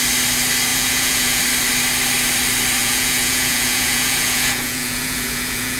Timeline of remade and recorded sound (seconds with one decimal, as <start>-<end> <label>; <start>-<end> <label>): 0.0-0.7 recorded; 0.7-1.4 remade; 1.4-2.8 recorded; 2.8-5.8 remade